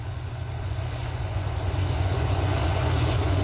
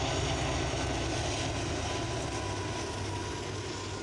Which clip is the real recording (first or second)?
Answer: second